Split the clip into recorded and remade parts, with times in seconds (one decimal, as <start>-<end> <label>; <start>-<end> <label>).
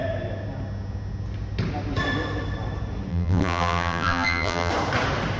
0.0-3.1 recorded; 3.1-4.7 remade; 4.7-5.4 recorded